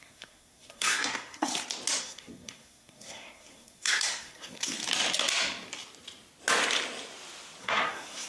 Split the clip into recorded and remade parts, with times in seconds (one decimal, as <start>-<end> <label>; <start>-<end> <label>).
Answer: 0.0-1.5 remade; 1.5-2.0 recorded; 2.0-4.8 remade; 4.8-7.6 recorded; 7.6-8.3 remade